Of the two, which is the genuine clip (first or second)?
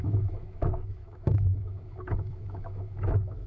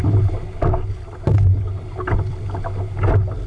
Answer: second